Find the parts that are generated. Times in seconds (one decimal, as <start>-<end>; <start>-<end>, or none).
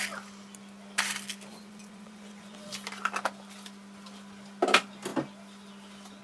1.5-2.7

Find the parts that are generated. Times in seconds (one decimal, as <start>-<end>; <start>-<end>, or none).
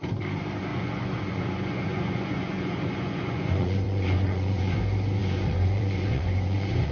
0.7-4.8; 5.2-6.9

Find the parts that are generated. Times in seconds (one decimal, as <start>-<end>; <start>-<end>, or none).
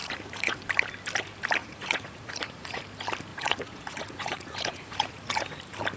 0.0-0.6; 1.6-2.8; 3.3-5.6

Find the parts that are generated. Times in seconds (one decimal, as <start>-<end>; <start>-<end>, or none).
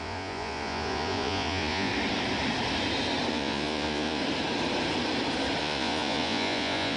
0.0-1.9; 3.3-4.2; 5.6-7.0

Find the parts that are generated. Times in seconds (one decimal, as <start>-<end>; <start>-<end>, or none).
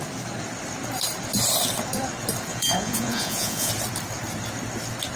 2.5-3.7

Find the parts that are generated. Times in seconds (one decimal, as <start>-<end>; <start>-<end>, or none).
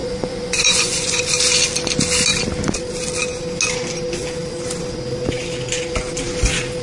0.0-1.2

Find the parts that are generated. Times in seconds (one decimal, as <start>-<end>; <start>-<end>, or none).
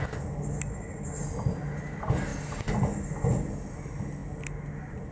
none